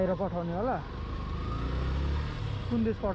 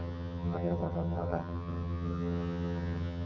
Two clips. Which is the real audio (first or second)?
first